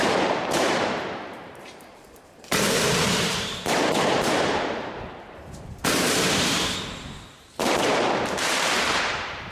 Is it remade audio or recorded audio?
remade